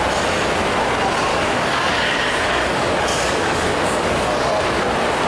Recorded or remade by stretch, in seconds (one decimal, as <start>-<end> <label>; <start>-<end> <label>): 0.0-1.3 recorded; 1.3-4.5 remade; 4.5-5.3 recorded